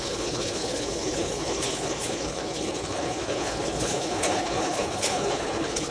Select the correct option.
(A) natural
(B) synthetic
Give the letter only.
B